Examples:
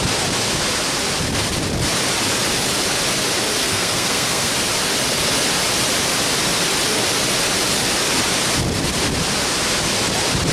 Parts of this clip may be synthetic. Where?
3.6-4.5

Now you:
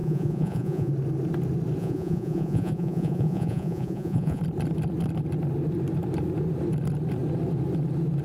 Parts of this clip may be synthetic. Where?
0.0-0.9; 1.8-4.4

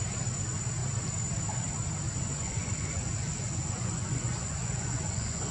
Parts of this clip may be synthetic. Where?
2.3-5.5

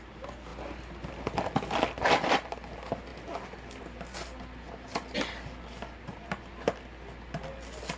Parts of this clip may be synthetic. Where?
none

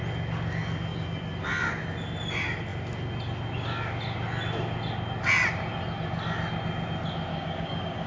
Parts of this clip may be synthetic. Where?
7.3-8.1

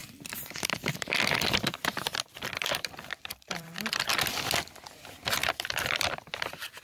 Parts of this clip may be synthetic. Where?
0.0-4.1; 5.4-6.8

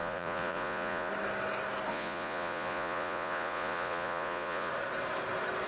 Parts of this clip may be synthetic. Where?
0.0-1.1; 1.9-4.7

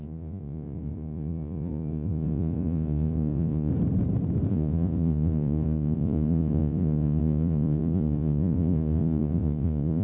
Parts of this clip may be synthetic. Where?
0.0-3.7; 4.5-10.0